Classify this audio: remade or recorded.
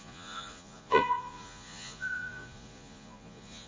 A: remade